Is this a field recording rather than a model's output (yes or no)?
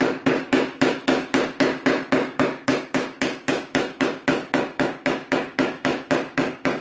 no